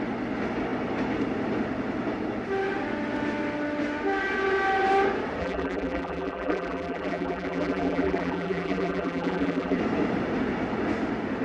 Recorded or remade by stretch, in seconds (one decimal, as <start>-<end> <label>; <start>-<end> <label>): 0.0-5.4 recorded; 5.4-9.8 remade; 9.8-11.4 recorded